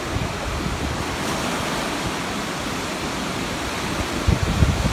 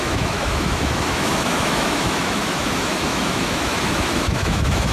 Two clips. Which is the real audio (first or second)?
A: first